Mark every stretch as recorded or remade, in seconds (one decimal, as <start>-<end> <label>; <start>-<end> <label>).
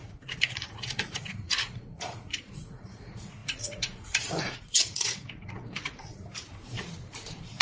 0.0-6.2 remade; 6.2-7.6 recorded